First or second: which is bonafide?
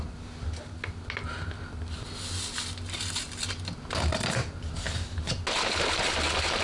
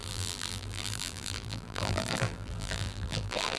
first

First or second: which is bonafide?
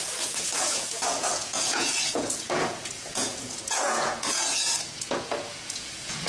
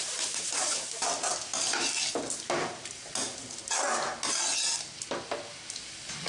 second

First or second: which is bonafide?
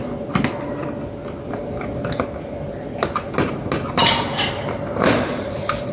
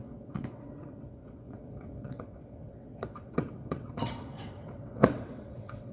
first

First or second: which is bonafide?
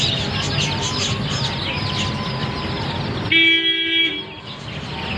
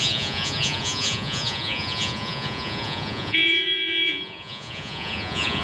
first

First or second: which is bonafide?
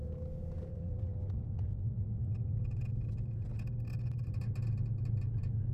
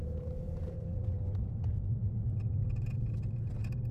first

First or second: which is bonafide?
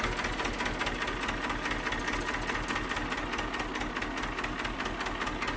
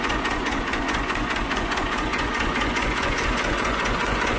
first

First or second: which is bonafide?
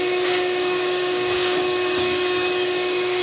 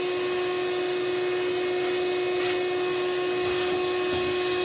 second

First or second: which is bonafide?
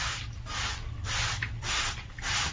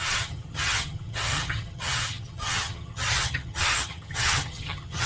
first